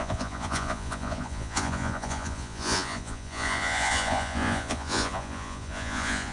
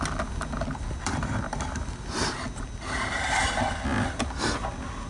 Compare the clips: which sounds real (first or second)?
second